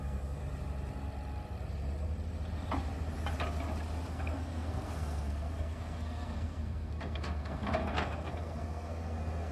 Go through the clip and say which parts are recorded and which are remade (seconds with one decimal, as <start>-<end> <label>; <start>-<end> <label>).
0.0-0.4 remade; 0.4-4.1 recorded; 4.1-9.5 remade